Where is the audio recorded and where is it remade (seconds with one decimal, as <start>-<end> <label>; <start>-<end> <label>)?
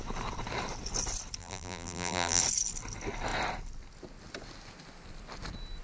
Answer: 0.0-1.4 recorded; 1.4-2.4 remade; 2.4-5.8 recorded